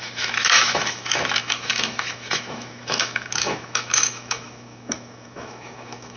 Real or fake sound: fake